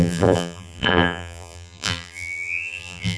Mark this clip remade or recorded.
remade